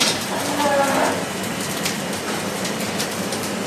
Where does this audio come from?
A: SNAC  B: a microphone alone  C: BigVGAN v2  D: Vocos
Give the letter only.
C